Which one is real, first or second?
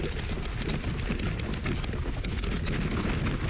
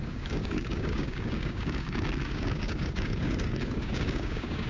first